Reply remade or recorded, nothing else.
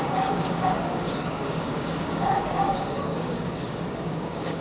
remade